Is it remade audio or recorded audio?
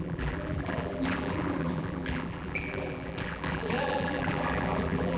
remade